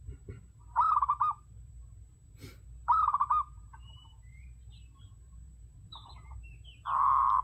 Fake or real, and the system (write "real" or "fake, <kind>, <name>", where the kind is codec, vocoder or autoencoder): fake, vocoder, BigVGAN v2